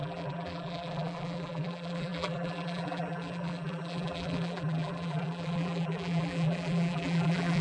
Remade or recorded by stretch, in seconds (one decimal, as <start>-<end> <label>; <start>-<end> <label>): 0.0-7.6 remade